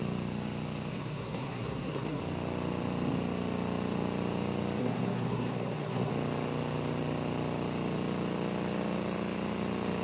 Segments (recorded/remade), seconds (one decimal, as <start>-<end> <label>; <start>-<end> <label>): 0.0-0.9 recorded; 0.9-2.2 remade; 2.2-4.8 recorded; 4.8-6.1 remade; 6.1-10.0 recorded